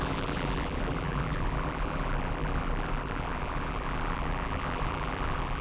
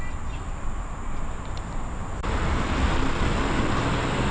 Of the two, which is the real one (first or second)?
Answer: second